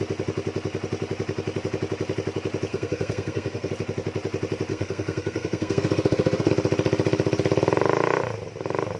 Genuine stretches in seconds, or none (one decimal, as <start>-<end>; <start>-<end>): 0.0-2.7; 3.7-4.7; 6.5-9.0